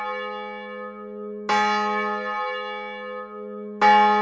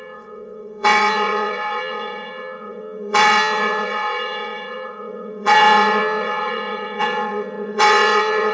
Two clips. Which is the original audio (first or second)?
first